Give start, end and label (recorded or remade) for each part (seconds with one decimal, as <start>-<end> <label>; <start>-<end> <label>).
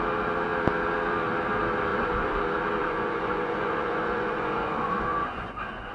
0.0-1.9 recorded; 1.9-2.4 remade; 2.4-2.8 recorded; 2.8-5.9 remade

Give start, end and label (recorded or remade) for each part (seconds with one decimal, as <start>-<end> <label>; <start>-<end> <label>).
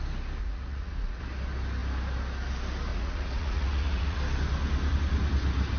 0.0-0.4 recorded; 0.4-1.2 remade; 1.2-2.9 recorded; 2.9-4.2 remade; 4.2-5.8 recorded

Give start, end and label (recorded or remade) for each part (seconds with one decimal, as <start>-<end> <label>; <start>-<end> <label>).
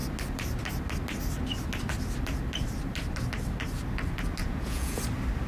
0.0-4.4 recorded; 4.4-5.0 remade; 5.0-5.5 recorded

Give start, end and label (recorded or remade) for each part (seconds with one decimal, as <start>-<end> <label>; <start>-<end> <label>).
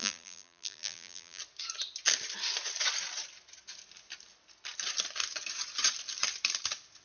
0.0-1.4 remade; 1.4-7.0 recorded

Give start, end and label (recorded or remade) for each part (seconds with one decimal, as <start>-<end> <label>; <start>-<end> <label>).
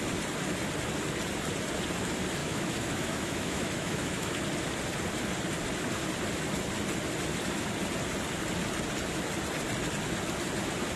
0.0-2.4 recorded; 2.4-4.3 remade; 4.3-11.0 recorded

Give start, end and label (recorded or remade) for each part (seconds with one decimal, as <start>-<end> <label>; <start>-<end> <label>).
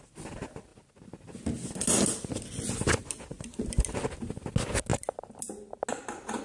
0.0-6.4 recorded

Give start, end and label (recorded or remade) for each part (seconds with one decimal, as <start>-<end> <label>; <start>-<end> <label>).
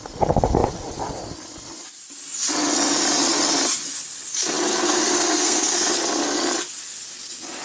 0.0-4.7 recorded; 4.7-5.9 remade; 5.9-7.6 recorded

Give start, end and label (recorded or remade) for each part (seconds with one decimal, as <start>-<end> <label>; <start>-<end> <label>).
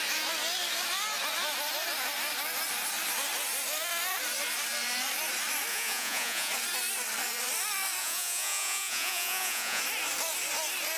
0.0-5.7 recorded; 5.7-6.5 remade; 6.5-8.0 recorded; 8.0-9.8 remade; 9.8-11.0 recorded